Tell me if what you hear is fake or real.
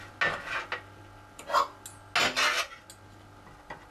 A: real